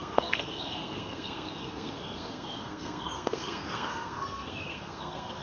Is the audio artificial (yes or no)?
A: yes